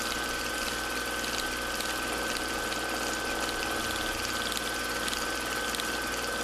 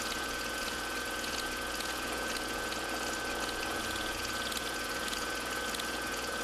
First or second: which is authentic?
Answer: first